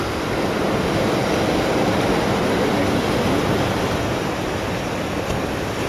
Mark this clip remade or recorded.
recorded